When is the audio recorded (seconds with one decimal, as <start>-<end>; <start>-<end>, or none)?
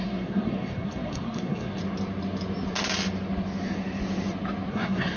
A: 1.8-4.7